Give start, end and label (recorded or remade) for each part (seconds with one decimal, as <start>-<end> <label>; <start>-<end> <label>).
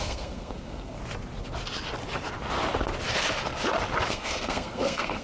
0.0-1.0 remade; 1.0-4.1 recorded; 4.1-5.2 remade